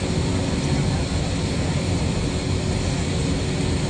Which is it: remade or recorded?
recorded